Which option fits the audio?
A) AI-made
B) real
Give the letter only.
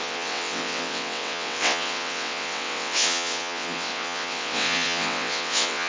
A